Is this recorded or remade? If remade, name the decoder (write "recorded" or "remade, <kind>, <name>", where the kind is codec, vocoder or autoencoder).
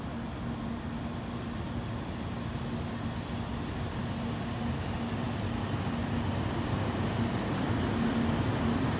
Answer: recorded